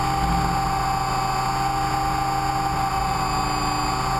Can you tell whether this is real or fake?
real